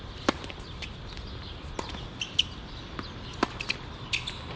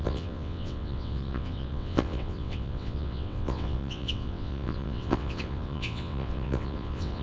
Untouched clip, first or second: first